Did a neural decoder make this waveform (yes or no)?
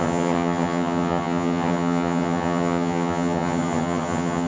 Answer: yes